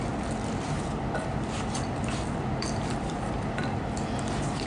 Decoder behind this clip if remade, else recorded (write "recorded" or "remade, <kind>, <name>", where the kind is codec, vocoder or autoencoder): remade, vocoder, BigVGAN v2